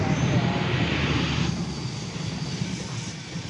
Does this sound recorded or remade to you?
recorded